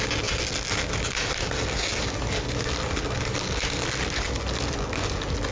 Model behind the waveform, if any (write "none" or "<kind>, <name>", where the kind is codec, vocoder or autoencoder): none